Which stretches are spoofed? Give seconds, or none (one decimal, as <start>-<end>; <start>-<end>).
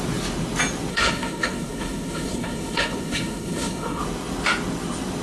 0.9-4.0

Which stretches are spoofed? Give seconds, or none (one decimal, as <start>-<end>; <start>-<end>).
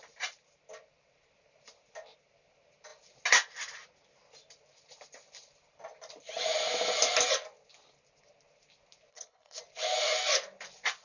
9.1-9.6